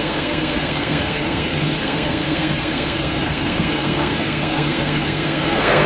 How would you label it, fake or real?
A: fake